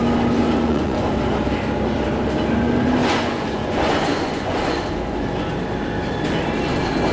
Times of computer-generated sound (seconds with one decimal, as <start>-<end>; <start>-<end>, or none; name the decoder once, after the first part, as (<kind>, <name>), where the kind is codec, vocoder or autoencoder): 0.4-1.1 (vocoder, Vocos); 3.0-5.5